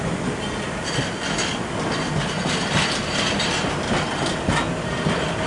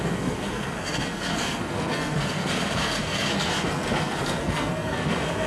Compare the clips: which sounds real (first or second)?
first